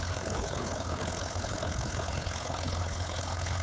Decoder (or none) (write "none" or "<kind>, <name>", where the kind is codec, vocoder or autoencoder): codec, HILCodec